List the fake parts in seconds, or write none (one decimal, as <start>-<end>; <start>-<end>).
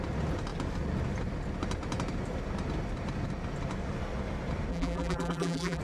4.7-5.8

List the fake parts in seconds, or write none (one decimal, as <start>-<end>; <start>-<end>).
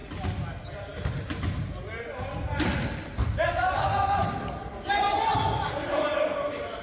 none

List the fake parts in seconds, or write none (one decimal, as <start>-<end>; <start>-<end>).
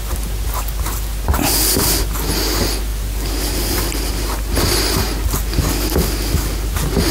none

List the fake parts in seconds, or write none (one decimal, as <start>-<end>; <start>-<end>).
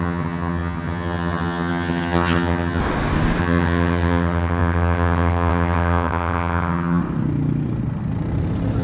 0.0-2.8; 3.4-7.0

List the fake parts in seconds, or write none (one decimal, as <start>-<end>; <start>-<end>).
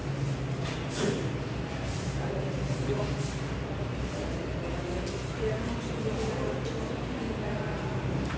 none